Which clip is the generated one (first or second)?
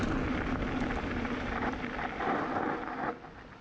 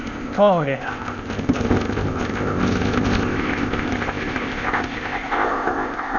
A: second